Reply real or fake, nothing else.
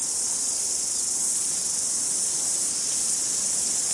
real